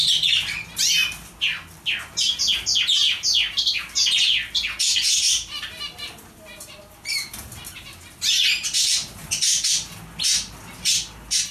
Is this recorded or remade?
recorded